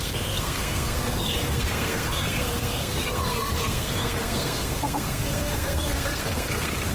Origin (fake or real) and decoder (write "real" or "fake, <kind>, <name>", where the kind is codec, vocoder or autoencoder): fake, codec, SNAC